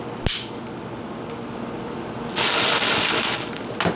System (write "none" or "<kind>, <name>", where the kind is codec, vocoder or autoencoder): none